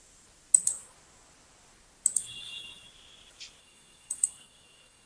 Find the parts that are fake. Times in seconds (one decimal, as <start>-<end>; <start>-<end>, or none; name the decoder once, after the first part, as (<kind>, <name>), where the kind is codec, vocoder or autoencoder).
3.6-5.1 (codec, SNAC)